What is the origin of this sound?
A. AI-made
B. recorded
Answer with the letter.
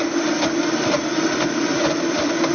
B